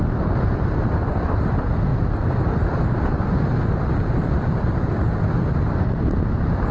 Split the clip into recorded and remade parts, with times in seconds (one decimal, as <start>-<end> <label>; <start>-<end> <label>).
0.0-1.9 recorded; 1.9-5.6 remade; 5.6-6.7 recorded